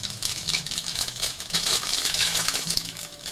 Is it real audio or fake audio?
fake